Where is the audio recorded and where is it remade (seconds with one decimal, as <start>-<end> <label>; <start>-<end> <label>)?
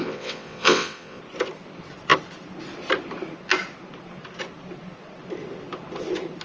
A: 0.0-1.2 remade; 1.2-6.4 recorded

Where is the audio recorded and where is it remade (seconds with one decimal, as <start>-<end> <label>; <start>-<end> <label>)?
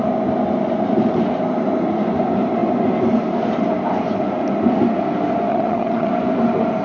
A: 0.0-5.5 recorded; 5.5-6.1 remade; 6.1-6.8 recorded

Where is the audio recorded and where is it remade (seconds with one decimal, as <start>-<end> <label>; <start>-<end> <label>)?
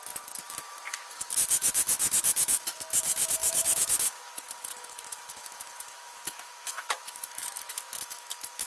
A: 0.0-8.7 remade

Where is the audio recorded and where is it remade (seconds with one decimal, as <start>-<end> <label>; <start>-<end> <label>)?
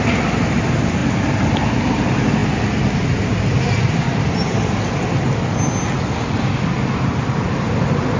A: 0.0-1.0 recorded; 1.0-1.7 remade; 1.7-8.2 recorded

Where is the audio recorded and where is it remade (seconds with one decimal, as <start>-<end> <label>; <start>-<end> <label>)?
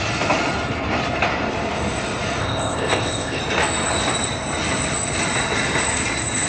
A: 0.0-2.4 recorded; 2.4-3.4 remade; 3.4-6.5 recorded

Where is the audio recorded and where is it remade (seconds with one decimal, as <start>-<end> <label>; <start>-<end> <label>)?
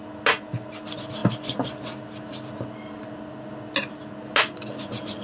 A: 0.0-5.2 recorded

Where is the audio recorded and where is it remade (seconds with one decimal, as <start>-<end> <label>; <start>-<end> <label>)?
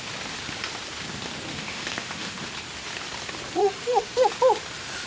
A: 0.0-1.5 recorded; 1.5-2.4 remade; 2.4-3.6 recorded; 3.6-4.3 remade; 4.3-5.1 recorded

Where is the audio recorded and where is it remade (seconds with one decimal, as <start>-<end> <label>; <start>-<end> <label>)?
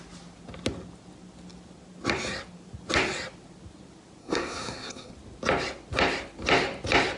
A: 0.0-4.2 recorded; 4.2-5.1 remade; 5.1-7.2 recorded